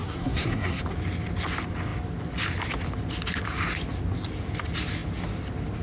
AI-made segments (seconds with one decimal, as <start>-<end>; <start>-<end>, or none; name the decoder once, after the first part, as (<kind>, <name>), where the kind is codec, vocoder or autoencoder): 0.0-0.8 (codec, SNAC)